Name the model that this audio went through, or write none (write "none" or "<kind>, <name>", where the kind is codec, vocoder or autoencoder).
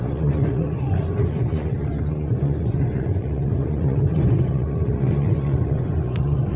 vocoder, Vocos